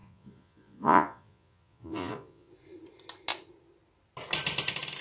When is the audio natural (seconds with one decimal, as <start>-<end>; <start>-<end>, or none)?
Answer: 2.5-5.0